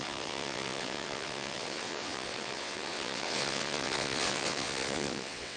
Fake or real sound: fake